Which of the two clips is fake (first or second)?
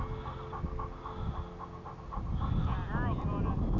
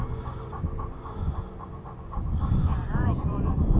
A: second